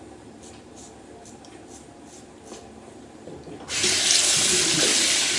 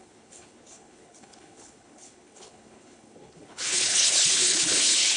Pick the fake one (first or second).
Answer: second